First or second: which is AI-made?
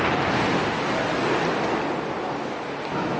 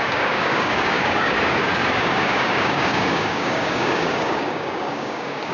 second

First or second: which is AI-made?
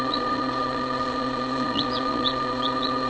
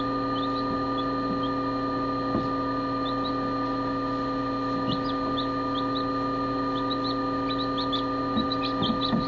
first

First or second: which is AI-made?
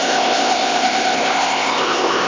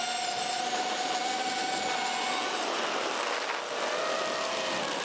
first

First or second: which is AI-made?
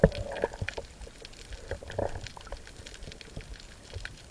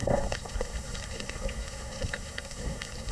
second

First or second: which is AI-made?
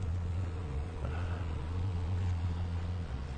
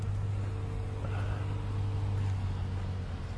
first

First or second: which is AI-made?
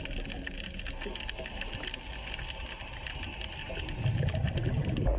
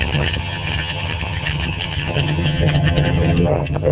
second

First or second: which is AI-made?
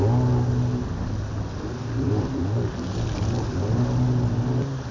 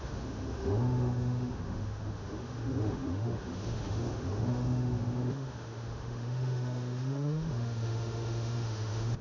second